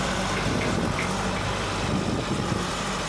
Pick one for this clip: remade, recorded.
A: recorded